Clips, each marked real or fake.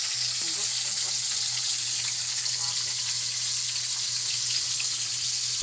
real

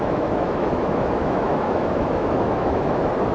fake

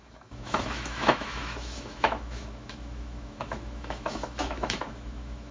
fake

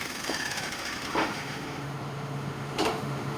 fake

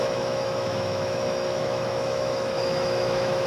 fake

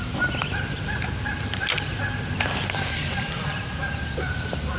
real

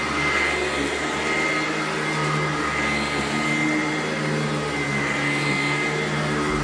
real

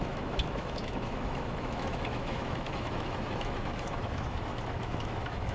fake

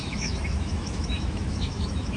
fake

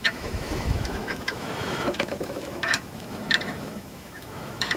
fake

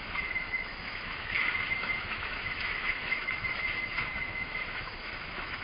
fake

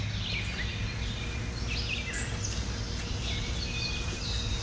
real